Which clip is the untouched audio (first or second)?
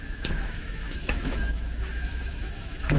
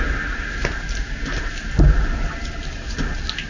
second